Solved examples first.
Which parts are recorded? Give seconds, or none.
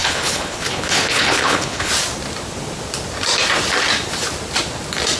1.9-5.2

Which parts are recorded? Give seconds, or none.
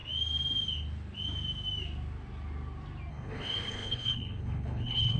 0.0-3.1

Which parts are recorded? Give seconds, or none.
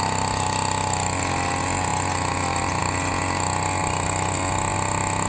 0.0-5.3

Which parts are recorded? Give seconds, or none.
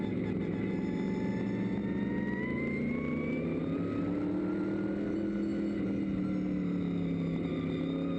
0.0-8.2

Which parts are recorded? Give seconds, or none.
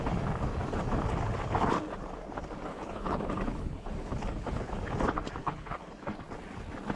0.0-2.7; 4.8-5.4; 5.9-7.0